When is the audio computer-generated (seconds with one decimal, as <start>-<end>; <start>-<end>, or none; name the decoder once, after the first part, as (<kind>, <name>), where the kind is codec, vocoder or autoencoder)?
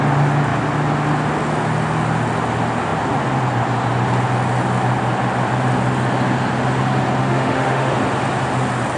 7.2-7.9 (autoencoder, DAC-VAE)